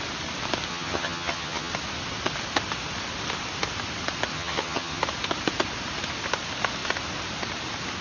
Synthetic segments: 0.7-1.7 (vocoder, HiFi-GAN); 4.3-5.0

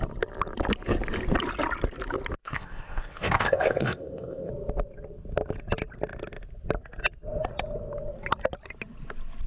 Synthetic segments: 2.4-4.5 (codec, ZipCodec)

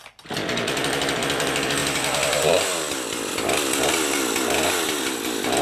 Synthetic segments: 0.0-1.8 (vocoder, BigVGAN v2); 5.0-5.6

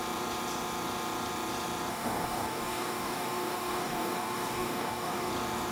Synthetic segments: 1.9-5.3 (codec, DAC)

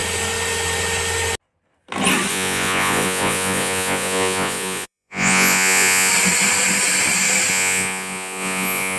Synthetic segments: 2.3-6.1 (vocoder, Vocos); 7.5-9.0